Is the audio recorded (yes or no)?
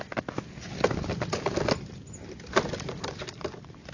yes